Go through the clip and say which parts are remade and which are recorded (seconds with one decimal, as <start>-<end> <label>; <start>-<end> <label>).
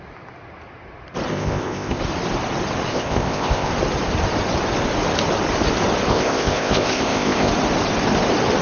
0.0-1.3 recorded; 1.3-2.0 remade; 2.0-2.9 recorded; 2.9-3.7 remade; 3.7-6.1 recorded; 6.1-7.5 remade; 7.5-8.6 recorded